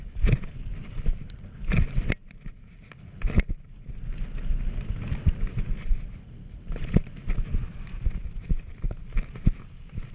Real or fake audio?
real